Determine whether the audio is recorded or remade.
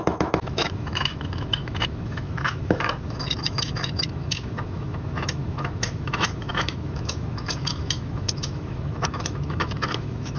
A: remade